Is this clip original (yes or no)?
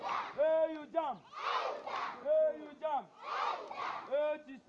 yes